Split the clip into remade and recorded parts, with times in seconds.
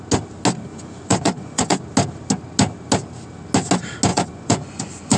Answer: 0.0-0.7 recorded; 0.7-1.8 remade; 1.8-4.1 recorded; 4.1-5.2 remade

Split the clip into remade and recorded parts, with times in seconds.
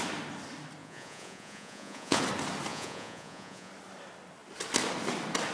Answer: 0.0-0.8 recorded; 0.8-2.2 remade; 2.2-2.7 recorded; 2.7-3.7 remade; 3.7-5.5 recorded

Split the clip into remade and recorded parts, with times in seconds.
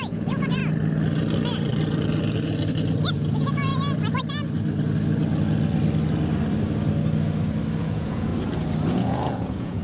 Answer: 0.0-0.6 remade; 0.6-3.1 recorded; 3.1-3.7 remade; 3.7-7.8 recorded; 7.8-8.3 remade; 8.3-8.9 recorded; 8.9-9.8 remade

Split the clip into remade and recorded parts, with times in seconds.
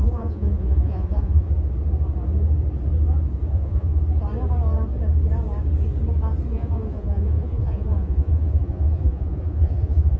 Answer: 0.0-1.5 remade; 1.5-3.5 recorded; 3.5-4.0 remade; 4.0-6.5 recorded; 6.5-10.2 remade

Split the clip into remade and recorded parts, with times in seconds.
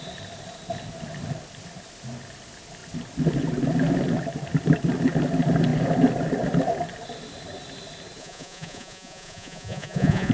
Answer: 0.0-8.2 recorded; 8.2-10.3 remade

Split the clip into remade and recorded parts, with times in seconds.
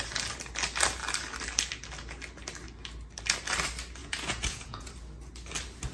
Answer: 0.0-4.0 recorded; 4.0-4.9 remade; 4.9-5.9 recorded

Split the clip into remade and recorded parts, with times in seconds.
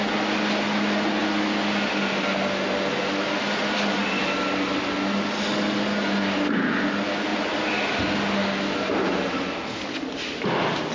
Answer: 0.0-10.9 recorded